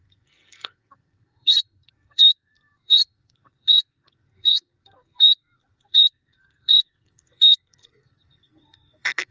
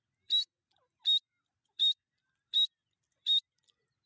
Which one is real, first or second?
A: second